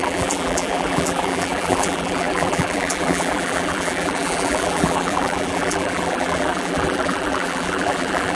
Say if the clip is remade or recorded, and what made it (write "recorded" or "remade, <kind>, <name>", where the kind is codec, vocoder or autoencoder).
remade, vocoder, BigVGAN v2